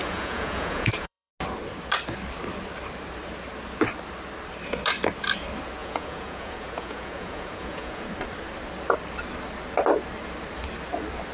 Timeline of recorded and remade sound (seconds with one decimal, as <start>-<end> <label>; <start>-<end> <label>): 0.0-1.3 remade; 1.3-5.8 recorded; 5.8-8.0 remade; 8.0-11.3 recorded